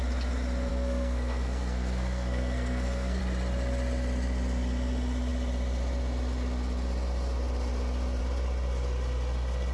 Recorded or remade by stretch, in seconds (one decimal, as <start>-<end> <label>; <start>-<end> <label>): 0.0-0.7 recorded; 0.7-3.2 remade; 3.2-9.7 recorded